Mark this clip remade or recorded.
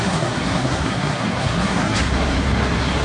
remade